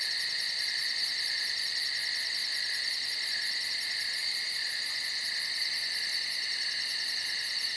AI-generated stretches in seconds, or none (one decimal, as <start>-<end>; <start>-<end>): 4.2-4.8